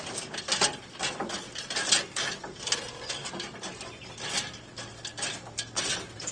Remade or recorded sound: recorded